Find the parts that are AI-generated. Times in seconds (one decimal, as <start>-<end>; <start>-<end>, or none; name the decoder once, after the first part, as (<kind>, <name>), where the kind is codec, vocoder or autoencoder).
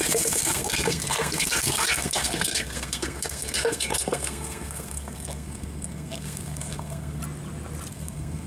0.0-7.2 (codec, SNAC); 7.9-8.5